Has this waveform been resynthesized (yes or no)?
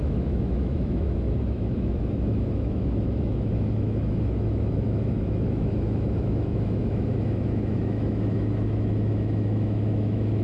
yes